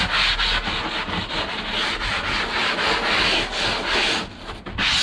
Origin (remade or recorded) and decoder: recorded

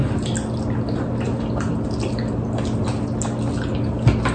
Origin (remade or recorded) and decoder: recorded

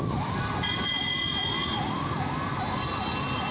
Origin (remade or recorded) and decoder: recorded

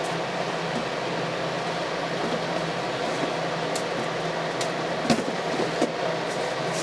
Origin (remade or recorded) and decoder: recorded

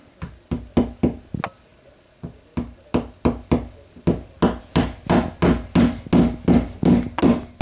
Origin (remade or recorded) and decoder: recorded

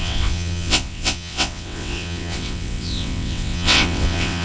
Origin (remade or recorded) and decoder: remade, vocoder, WaveNeXt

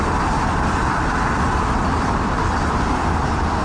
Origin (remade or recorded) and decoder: recorded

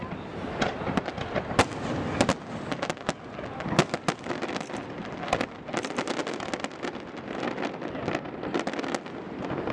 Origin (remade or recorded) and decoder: recorded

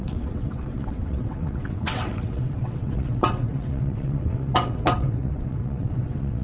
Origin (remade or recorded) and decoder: remade, vocoder, WaveNeXt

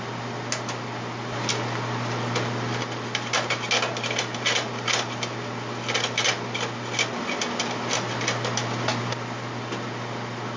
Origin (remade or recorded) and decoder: recorded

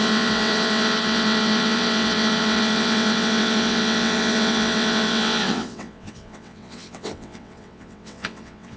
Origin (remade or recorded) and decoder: remade, vocoder, WaveNeXt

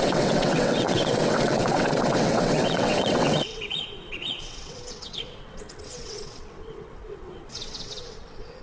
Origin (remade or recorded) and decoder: remade, vocoder, WaveNeXt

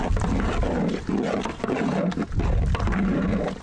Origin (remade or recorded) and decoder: recorded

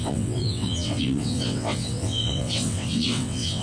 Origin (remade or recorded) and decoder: remade, vocoder, WaveNeXt